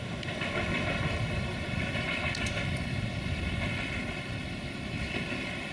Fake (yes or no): no